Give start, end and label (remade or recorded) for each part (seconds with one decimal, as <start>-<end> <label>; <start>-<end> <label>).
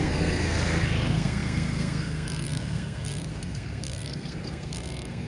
0.0-5.3 remade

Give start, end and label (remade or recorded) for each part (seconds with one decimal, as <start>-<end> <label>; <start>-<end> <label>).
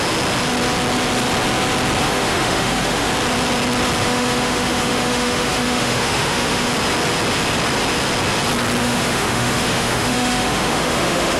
0.0-2.0 recorded; 2.0-3.1 remade; 3.1-4.0 recorded; 4.0-6.7 remade; 6.7-8.8 recorded; 8.8-11.4 remade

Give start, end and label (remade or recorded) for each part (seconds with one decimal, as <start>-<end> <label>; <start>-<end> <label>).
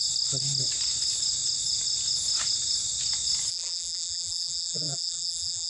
0.0-3.5 recorded; 3.5-5.7 remade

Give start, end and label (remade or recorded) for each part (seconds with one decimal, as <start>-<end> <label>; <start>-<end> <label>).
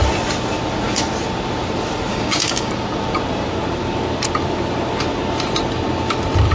0.0-2.1 recorded; 2.1-2.7 remade; 2.7-6.5 recorded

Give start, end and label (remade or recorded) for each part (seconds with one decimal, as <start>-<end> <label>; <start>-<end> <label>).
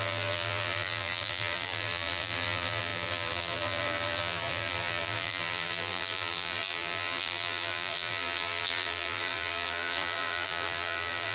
0.0-11.3 remade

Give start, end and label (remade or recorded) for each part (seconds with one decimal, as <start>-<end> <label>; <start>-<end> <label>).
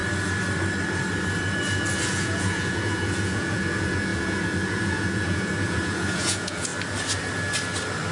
0.0-2.1 recorded; 2.1-6.7 remade; 6.7-8.1 recorded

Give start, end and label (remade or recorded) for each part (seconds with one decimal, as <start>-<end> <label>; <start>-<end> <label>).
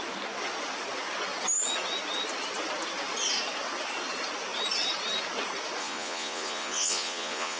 0.0-5.8 recorded; 5.8-7.6 remade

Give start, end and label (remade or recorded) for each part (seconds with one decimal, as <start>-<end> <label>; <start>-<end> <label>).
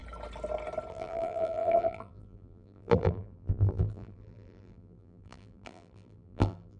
0.0-0.9 recorded; 0.9-6.8 remade